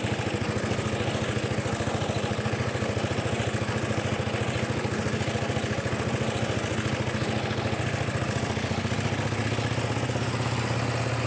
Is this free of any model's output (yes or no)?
yes